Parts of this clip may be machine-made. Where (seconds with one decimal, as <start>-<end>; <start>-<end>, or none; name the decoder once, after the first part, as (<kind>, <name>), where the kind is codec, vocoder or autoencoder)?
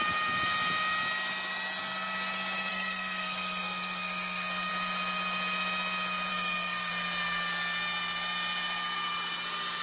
2.7-4.7 (codec, SNAC); 6.3-6.9